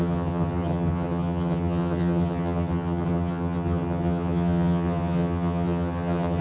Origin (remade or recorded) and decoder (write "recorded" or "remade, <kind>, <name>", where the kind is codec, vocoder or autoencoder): remade, vocoder, HiFi-GAN